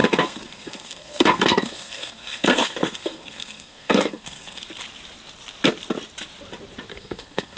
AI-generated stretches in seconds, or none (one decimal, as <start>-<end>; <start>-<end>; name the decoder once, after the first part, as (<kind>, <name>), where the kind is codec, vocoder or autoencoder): 0.0-4.6 (codec, SNAC); 6.9-7.6